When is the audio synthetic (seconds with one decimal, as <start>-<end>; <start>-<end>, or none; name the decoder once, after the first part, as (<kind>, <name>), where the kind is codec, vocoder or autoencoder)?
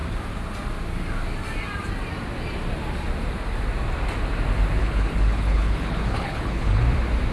4.8-6.8 (codec, HILCodec)